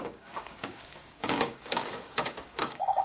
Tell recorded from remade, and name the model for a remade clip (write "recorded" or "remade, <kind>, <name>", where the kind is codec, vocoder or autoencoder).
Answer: remade, codec, DAC